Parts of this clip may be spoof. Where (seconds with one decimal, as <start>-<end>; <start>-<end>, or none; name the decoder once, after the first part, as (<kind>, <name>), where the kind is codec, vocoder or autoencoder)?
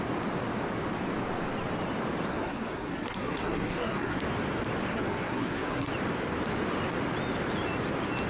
2.3-4.2 (codec, SNAC); 4.9-5.9